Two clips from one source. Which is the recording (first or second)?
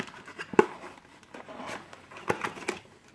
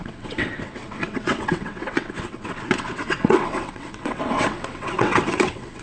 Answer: first